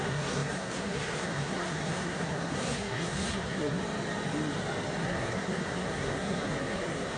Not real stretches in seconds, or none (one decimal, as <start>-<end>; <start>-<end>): 0.0-3.8; 5.0-7.2